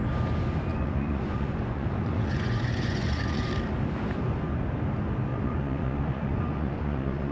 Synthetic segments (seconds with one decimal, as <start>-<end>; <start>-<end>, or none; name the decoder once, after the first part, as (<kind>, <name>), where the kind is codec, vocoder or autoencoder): 0.7-3.5 (vocoder, Vocos); 5.3-7.3